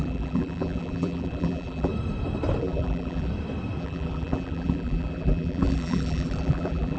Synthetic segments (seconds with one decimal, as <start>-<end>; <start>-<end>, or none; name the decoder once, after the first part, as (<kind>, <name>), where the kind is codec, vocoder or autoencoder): 0.0-1.9 (vocoder, BigVGAN v2); 2.6-3.3; 3.8-7.0